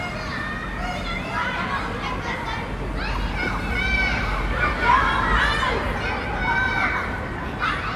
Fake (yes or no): no